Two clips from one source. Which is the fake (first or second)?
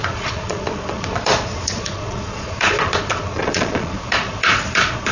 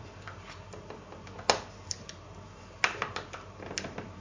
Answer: first